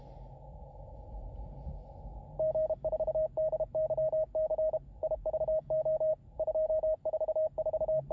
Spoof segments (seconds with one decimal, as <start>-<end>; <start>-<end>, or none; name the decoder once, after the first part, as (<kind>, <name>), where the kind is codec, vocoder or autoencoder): none